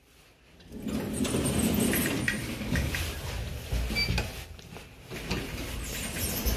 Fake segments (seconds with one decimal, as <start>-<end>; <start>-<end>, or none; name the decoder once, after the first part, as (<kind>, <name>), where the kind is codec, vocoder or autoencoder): 2.4-2.9 (codec, DAC)